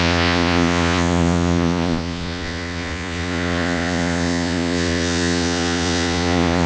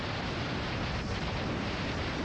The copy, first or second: first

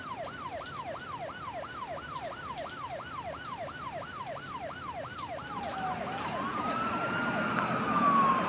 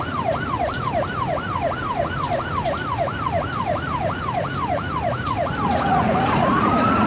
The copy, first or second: second